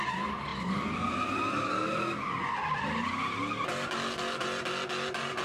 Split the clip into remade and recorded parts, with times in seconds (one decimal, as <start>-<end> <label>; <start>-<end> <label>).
0.0-5.4 recorded